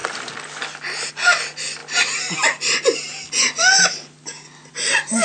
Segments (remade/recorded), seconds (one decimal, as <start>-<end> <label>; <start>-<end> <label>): 0.0-5.2 recorded